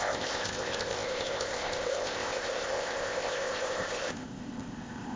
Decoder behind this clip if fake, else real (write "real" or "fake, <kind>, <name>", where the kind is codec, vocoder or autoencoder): fake, codec, ZipCodec